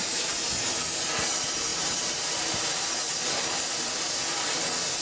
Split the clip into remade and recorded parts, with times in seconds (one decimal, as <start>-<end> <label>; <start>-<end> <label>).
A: 0.0-1.7 recorded; 1.7-4.6 remade; 4.6-5.0 recorded